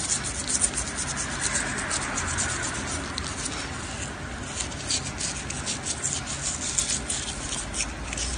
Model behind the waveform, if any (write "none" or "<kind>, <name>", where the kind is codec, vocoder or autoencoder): none